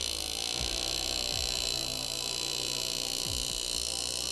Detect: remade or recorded recorded